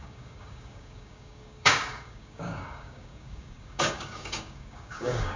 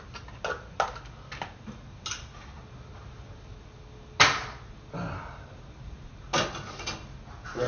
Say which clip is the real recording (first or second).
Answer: second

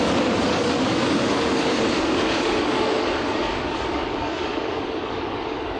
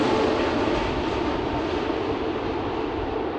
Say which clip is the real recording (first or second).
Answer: second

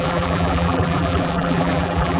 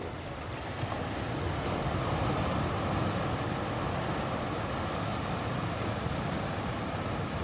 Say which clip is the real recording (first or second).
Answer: second